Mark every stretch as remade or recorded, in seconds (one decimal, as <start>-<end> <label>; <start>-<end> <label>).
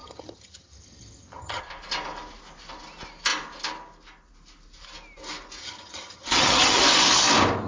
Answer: 0.0-1.6 remade; 1.6-5.6 recorded; 5.6-6.8 remade; 6.8-7.7 recorded